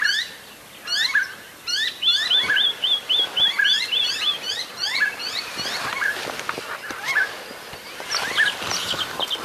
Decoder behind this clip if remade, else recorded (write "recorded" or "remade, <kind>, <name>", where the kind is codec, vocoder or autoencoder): recorded